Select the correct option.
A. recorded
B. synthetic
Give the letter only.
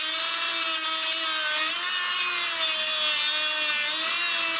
A